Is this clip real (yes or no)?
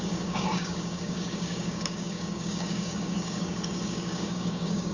no